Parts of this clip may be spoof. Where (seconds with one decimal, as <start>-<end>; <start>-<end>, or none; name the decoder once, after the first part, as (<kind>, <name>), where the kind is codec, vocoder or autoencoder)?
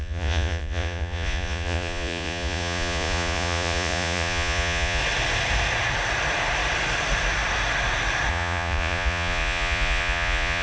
0.0-5.0 (vocoder, Vocos); 8.3-10.6